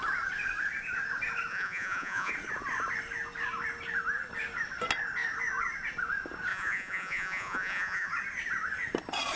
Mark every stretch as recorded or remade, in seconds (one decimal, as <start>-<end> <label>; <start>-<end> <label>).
0.0-1.5 recorded; 1.5-2.3 remade; 2.3-6.5 recorded; 6.5-8.1 remade; 8.1-9.4 recorded